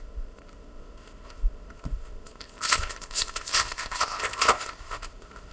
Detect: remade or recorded remade